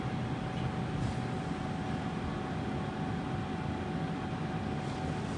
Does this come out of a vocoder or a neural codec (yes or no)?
no